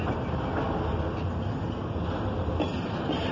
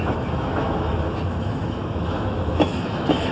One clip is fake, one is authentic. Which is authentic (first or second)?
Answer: first